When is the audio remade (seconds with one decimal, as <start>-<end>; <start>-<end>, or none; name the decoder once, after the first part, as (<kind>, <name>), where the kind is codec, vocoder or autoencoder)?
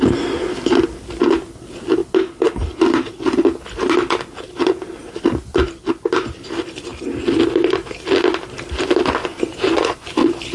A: 9.2-10.1 (vocoder, Vocos)